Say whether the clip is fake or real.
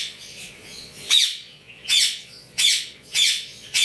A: fake